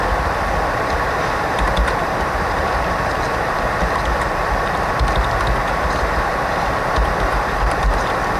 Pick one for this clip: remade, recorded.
remade